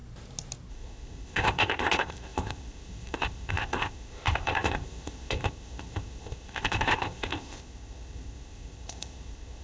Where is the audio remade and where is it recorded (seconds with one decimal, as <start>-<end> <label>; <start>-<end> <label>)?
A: 0.0-0.7 recorded; 0.7-9.6 remade